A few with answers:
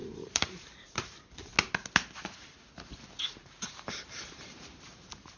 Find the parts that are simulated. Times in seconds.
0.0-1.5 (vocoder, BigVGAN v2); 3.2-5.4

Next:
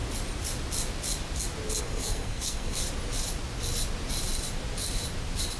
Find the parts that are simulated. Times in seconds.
1.8-2.8 (codec, SNAC)

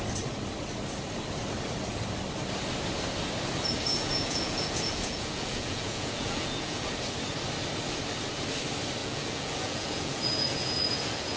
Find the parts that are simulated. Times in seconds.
3.9-6.9 (vocoder, Vocos); 9.0-11.4

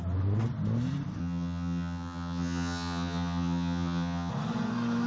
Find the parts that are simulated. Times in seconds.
1.2-4.3 (vocoder, HiFi-GAN)

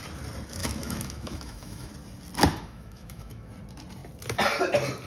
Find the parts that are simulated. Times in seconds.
0.6-1.9 (autoencoder, DAC-VAE); 2.5-3.5

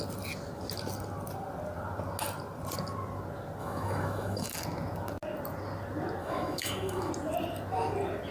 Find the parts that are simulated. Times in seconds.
3.6-4.5 (autoencoder, DAC-VAE); 6.2-7.1

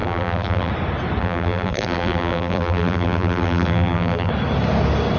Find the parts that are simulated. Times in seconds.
0.0-0.7 (vocoder, BigVGAN v2); 1.2-4.3

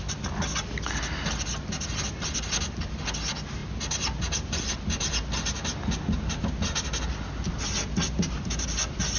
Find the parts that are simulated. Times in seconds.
none